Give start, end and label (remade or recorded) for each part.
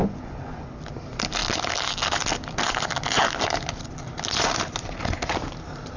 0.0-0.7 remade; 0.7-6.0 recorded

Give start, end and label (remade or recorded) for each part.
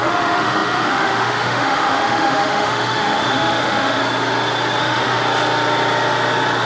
0.0-4.0 remade; 4.0-4.8 recorded; 4.8-5.2 remade; 5.2-6.6 recorded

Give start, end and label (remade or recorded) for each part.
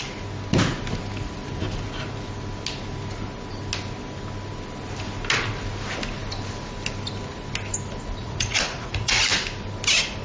0.0-8.2 recorded; 8.2-9.2 remade; 9.2-10.2 recorded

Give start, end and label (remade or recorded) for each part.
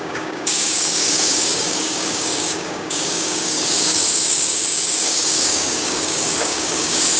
0.0-7.2 remade